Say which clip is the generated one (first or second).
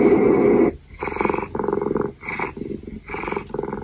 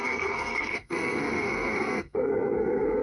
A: second